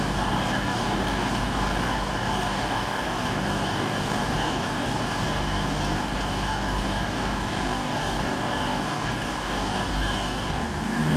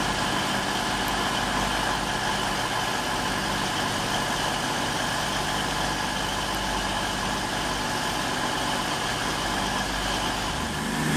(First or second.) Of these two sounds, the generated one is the first